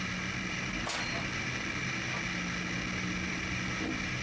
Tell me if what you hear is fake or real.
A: real